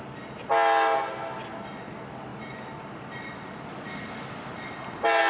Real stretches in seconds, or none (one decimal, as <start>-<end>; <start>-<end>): 0.0-5.3